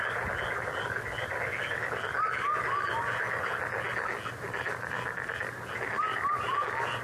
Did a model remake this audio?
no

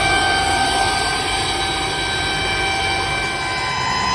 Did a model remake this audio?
no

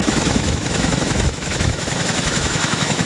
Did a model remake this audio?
yes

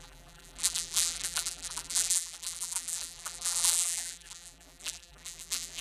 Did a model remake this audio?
yes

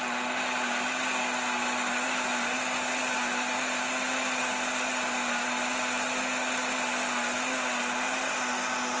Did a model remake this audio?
no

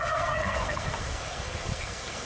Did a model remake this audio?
yes